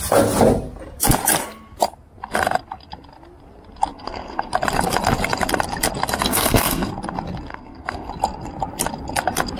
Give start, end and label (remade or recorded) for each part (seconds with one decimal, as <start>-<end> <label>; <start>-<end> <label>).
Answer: 0.0-3.9 recorded; 3.9-4.5 remade; 4.5-6.3 recorded; 6.3-6.9 remade; 6.9-7.5 recorded; 7.5-8.1 remade; 8.1-9.6 recorded